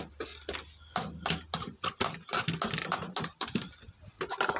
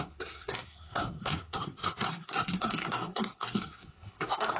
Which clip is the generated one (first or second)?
second